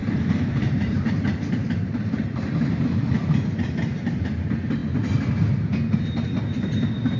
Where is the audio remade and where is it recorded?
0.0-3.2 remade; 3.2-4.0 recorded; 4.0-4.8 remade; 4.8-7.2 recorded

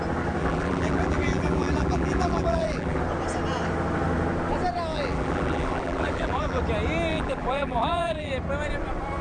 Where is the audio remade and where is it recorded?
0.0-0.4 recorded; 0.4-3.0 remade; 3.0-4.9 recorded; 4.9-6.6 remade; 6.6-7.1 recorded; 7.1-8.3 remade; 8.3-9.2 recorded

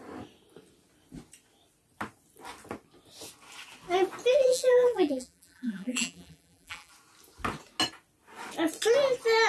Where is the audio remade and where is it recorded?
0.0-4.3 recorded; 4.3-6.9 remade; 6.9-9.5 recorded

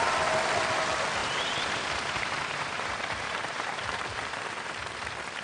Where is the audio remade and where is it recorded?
0.0-1.2 recorded; 1.2-4.4 remade; 4.4-5.4 recorded

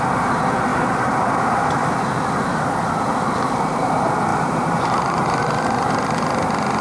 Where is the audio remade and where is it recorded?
0.0-0.7 recorded; 0.7-2.0 remade; 2.0-4.3 recorded; 4.3-5.4 remade; 5.4-6.8 recorded